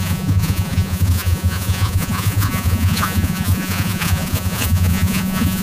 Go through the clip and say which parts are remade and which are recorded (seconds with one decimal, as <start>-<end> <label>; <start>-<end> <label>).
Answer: 0.0-5.6 remade